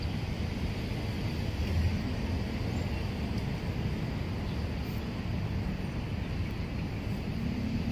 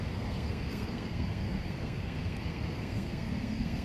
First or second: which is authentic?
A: first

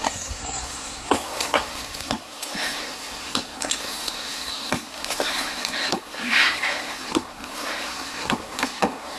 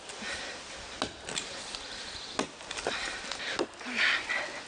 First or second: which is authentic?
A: second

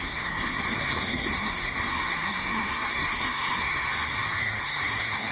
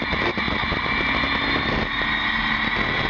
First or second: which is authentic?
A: second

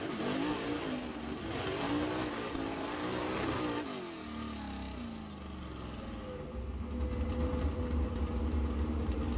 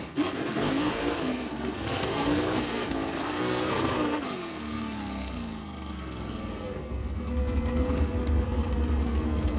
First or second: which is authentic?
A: first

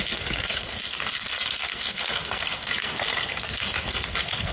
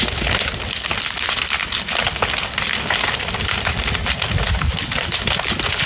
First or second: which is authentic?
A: second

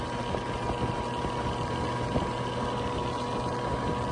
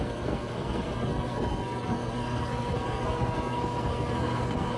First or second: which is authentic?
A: first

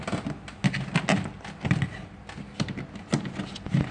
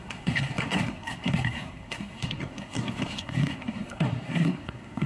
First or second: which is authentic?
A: first